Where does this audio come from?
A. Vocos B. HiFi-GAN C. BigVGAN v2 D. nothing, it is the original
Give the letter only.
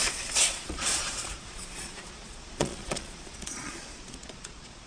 A